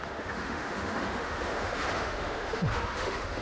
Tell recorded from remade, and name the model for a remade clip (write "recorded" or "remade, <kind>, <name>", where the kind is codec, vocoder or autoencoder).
remade, autoencoder, DAC-VAE